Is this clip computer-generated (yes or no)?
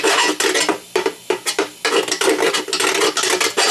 no